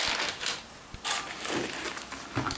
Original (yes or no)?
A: yes